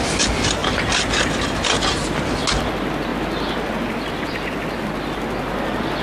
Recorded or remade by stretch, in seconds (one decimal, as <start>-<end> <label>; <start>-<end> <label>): 0.0-6.0 recorded